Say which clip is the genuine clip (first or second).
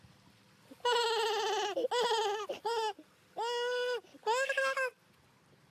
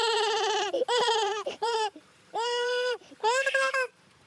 first